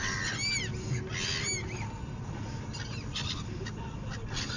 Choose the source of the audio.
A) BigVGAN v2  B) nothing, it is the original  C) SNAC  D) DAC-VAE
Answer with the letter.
B